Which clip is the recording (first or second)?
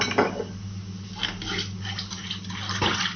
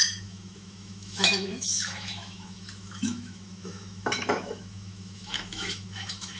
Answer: first